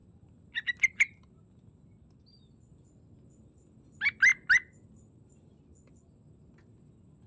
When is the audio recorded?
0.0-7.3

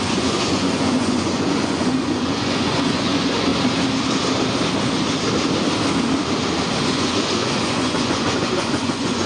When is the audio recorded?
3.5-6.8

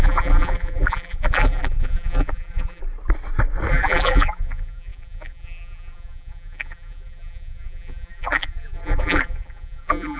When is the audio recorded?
2.8-3.7

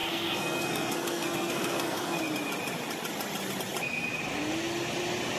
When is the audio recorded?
2.2-5.4